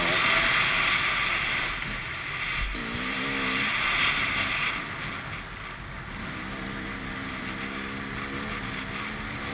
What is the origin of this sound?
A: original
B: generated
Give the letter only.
A